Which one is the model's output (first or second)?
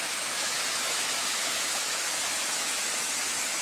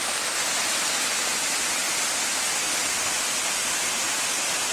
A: first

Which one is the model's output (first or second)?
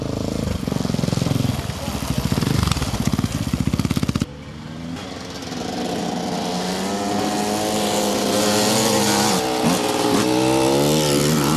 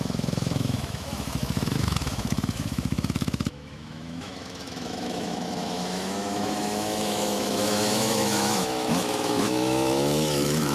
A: second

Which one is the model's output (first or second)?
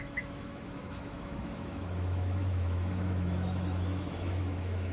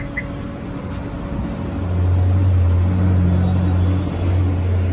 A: first